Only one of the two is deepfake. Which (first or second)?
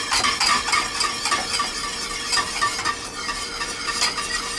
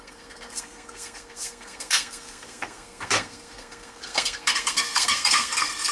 second